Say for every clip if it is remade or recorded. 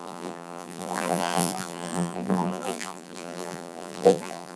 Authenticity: remade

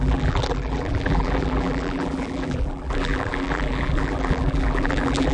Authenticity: remade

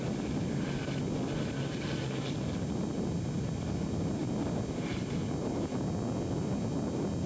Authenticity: recorded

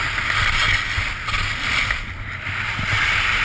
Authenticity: recorded